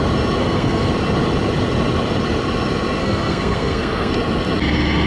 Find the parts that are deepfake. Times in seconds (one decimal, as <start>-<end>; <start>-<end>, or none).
0.4-0.9; 3.0-4.1